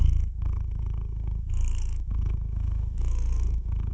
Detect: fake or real fake